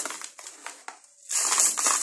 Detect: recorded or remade recorded